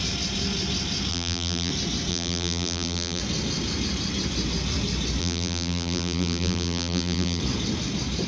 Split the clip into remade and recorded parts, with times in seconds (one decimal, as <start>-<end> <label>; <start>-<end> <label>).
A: 0.0-1.1 recorded; 1.1-1.7 remade; 1.7-2.1 recorded; 2.1-3.2 remade; 3.2-5.2 recorded; 5.2-7.4 remade; 7.4-8.3 recorded